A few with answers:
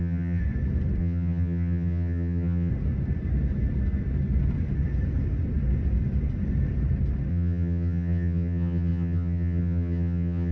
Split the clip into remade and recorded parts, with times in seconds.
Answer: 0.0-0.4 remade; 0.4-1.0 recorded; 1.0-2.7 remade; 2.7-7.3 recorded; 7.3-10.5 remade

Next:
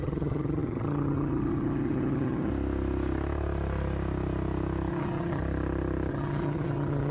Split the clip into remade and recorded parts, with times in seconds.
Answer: 0.0-2.5 remade; 2.5-4.9 recorded; 4.9-5.4 remade; 5.4-6.1 recorded; 6.1-7.1 remade

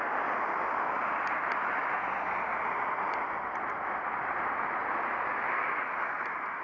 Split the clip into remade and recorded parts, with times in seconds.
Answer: 0.0-6.6 recorded

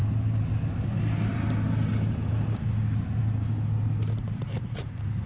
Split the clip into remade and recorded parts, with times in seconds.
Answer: 0.0-5.3 recorded

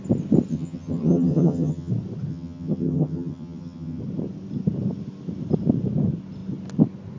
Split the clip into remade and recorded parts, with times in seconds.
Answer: 0.0-0.5 recorded; 0.5-1.9 remade; 1.9-2.3 recorded; 2.3-4.0 remade; 4.0-7.2 recorded

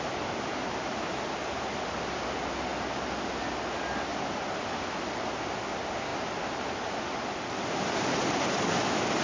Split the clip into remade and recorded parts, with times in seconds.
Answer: 0.0-9.2 recorded

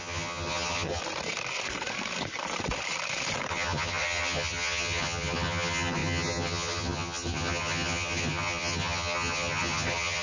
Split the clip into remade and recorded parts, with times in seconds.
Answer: 0.0-1.0 remade; 1.0-3.5 recorded; 3.5-10.2 remade

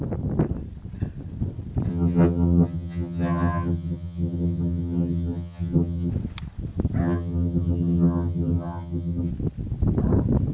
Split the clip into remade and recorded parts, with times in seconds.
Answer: 0.0-1.9 recorded; 1.9-6.1 remade; 6.1-7.0 recorded; 7.0-9.3 remade; 9.3-10.5 recorded